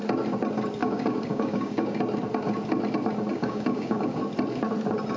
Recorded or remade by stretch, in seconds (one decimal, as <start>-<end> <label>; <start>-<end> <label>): 0.0-0.8 recorded; 0.8-2.0 remade; 2.0-3.3 recorded; 3.3-4.2 remade; 4.2-5.2 recorded